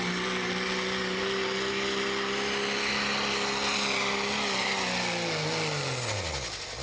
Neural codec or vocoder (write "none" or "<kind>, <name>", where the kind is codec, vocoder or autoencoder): none